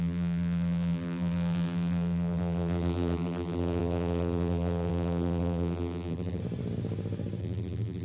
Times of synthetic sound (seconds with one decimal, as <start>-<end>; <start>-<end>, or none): 0.0-6.4; 7.4-8.0